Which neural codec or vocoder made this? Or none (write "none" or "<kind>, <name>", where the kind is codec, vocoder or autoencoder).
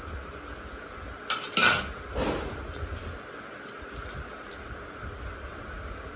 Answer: none